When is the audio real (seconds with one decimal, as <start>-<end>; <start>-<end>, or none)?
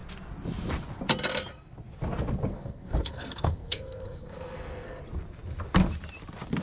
0.0-2.5; 5.0-6.6